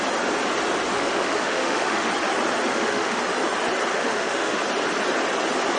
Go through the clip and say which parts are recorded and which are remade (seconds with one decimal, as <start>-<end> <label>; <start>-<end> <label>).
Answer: 0.0-0.9 recorded; 0.9-2.1 remade; 2.1-2.7 recorded; 2.7-3.2 remade; 3.2-3.9 recorded; 3.9-4.6 remade; 4.6-5.8 recorded